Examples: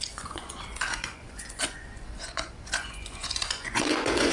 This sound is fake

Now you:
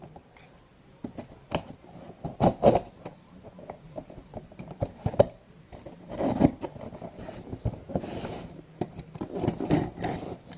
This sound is fake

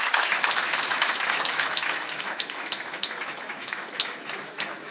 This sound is fake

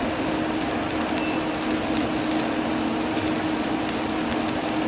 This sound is real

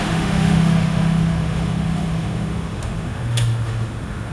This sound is fake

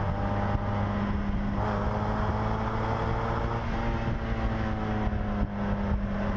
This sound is real